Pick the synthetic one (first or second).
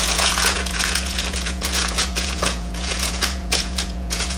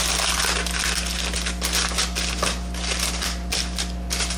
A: first